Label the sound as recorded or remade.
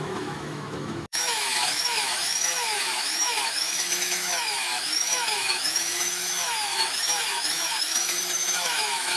remade